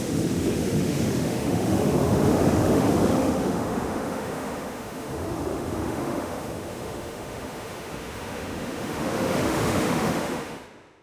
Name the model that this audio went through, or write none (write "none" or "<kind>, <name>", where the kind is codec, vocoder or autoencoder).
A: autoencoder, DAC-VAE